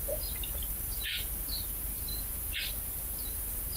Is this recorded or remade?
remade